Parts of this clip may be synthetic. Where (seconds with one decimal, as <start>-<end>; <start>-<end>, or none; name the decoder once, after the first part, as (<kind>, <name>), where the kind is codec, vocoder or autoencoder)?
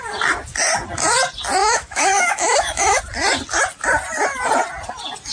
1.6-3.0 (autoencoder, DAC-VAE)